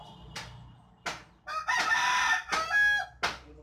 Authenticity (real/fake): real